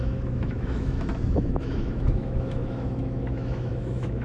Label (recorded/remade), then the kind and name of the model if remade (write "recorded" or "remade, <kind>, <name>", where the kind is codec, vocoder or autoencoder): remade, autoencoder, DAC-VAE